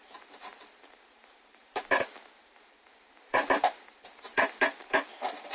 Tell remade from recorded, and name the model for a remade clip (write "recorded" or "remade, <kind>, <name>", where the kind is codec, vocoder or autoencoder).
remade, vocoder, BigVGAN v2